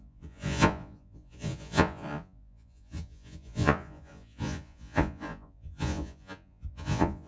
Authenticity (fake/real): fake